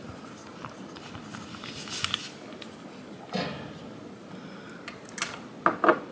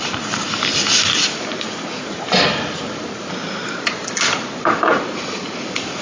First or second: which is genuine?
first